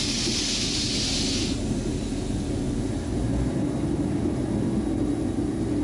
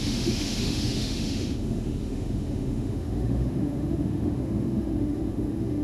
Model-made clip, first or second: second